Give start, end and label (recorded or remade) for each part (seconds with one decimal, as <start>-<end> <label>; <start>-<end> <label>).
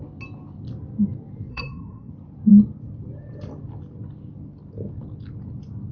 0.0-1.5 recorded; 1.5-2.1 remade; 2.1-5.9 recorded